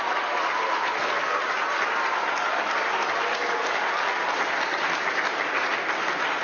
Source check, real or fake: real